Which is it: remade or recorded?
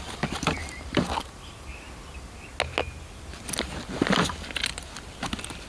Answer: recorded